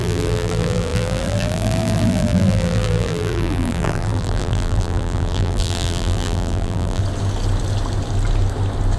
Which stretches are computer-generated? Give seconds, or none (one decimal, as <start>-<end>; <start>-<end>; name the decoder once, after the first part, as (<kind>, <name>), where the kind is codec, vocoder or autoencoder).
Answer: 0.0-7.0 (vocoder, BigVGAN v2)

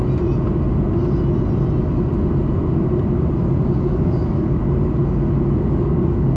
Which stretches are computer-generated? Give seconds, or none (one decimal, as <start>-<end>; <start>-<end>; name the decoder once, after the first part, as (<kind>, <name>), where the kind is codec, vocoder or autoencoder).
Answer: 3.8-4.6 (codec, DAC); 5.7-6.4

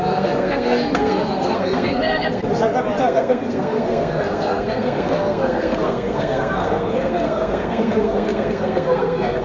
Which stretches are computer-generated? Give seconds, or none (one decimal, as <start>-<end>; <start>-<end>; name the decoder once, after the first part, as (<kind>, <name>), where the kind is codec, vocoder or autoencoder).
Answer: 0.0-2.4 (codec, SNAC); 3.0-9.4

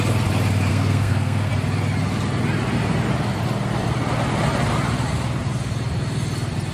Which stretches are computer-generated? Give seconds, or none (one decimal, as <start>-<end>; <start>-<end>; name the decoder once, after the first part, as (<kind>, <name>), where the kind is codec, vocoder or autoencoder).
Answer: 0.7-1.5 (codec, SNAC)

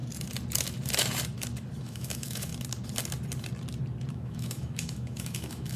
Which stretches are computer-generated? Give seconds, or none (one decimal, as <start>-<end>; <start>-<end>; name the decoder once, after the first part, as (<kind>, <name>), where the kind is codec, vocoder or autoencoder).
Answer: 1.8-2.5 (autoencoder, DAC-VAE); 4.1-5.8

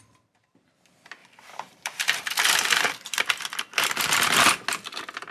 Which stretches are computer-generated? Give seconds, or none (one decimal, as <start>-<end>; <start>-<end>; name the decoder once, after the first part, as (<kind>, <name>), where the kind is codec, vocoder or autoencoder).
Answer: 1.2-4.4 (vocoder, BigVGAN v2)

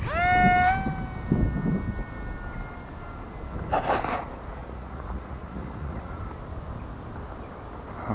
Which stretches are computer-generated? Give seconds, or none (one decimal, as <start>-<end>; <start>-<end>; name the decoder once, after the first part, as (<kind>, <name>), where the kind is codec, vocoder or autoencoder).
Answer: 4.6-6.2 (vocoder, Vocos)